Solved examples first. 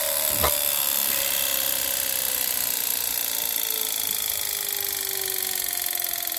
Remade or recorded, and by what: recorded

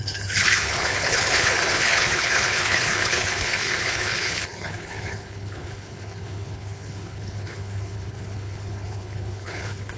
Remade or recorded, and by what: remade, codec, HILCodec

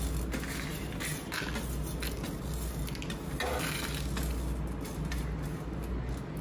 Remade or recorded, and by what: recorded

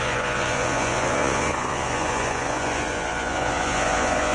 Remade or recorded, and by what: remade, vocoder, Vocos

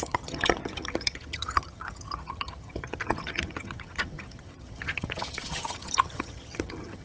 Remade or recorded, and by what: remade, vocoder, HiFi-GAN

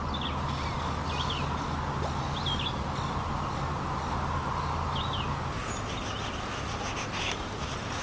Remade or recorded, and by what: recorded